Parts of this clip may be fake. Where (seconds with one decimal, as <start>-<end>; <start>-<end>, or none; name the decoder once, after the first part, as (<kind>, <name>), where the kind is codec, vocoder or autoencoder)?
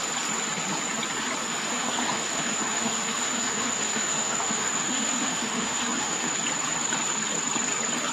1.4-6.3 (autoencoder, DAC-VAE)